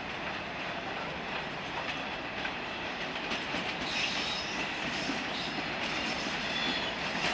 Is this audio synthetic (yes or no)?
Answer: yes